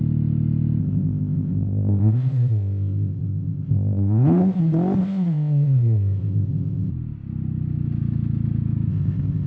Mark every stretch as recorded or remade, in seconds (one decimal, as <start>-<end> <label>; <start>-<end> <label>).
0.0-0.8 recorded; 0.8-4.6 remade; 4.6-5.0 recorded; 5.0-6.9 remade; 6.9-8.9 recorded; 8.9-9.5 remade